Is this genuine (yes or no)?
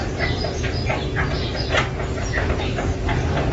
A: yes